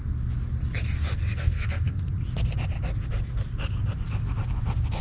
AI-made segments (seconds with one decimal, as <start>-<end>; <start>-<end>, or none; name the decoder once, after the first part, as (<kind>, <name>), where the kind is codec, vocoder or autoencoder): 1.1-2.0 (codec, SNAC)